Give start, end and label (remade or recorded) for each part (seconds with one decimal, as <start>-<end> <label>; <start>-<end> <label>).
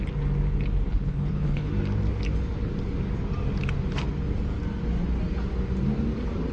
0.0-0.9 recorded; 0.9-1.7 remade; 1.7-6.5 recorded